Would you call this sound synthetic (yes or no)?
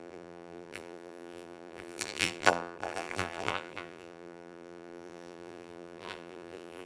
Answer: yes